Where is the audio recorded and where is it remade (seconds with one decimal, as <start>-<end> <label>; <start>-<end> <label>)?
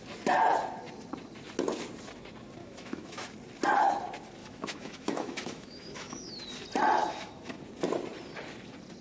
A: 0.0-2.6 recorded; 2.6-3.3 remade; 3.3-4.4 recorded; 4.4-6.3 remade; 6.3-7.0 recorded; 7.0-7.6 remade; 7.6-9.0 recorded